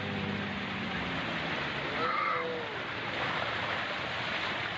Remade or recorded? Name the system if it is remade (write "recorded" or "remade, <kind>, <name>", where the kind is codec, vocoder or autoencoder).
recorded